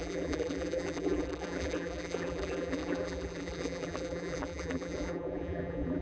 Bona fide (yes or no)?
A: no